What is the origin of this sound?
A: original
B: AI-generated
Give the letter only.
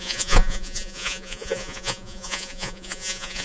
B